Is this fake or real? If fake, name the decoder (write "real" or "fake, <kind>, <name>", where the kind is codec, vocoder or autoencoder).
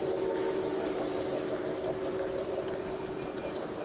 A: real